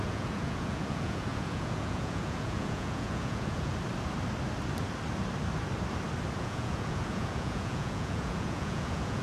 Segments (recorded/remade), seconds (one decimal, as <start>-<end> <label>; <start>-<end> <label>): 0.0-3.7 remade; 3.7-6.4 recorded; 6.4-9.2 remade